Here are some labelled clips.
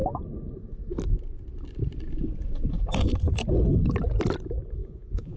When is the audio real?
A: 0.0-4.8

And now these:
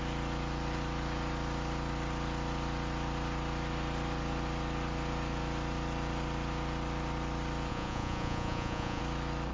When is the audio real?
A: 0.0-7.7; 9.0-9.5

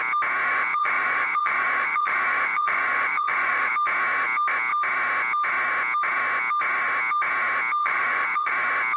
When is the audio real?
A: 0.0-0.4; 3.7-7.8; 8.5-9.0

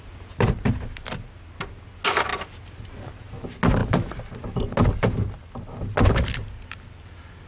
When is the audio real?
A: 0.0-7.5